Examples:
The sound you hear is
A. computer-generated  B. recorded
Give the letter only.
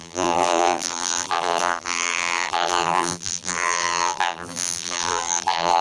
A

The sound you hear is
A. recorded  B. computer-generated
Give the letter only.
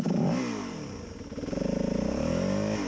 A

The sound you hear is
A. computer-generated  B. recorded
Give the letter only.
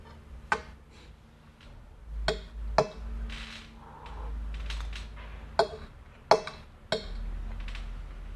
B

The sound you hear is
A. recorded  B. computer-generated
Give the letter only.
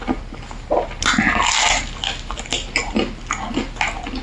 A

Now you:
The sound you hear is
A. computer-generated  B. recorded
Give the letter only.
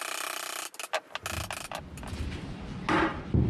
B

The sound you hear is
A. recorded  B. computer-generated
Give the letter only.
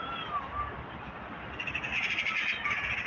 A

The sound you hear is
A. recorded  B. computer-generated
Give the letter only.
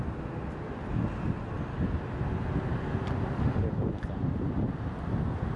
A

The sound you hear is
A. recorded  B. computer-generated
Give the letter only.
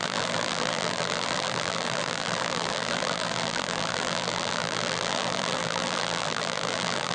B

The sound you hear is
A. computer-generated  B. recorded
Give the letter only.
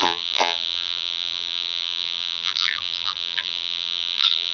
A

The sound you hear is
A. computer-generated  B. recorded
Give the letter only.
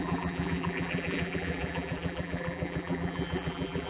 A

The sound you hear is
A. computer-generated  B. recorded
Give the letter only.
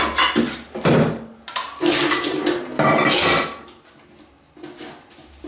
B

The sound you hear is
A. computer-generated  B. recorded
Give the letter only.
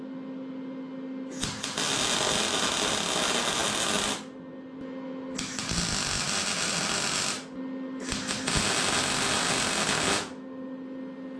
B